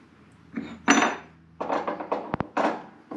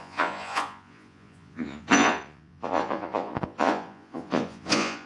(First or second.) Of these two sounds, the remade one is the second